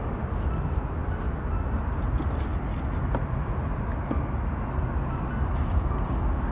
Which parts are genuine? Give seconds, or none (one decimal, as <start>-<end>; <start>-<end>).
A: 0.0-6.5